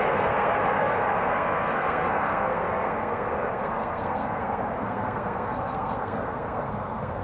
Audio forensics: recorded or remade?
remade